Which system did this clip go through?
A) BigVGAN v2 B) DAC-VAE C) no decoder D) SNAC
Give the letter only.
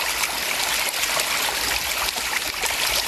C